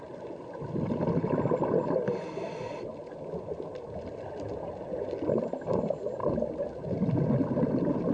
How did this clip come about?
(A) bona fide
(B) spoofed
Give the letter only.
A